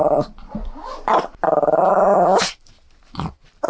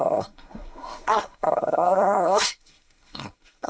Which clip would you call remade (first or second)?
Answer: second